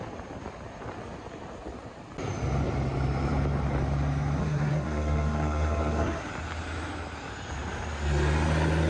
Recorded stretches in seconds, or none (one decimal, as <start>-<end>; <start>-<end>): 0.0-4.4; 6.3-8.9